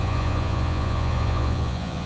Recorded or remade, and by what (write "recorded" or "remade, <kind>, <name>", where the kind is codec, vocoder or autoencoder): remade, vocoder, Vocos